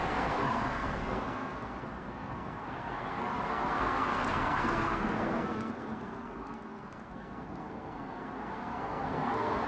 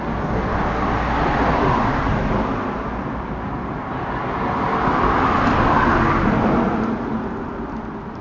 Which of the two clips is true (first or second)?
second